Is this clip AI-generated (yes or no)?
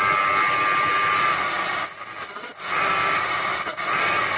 no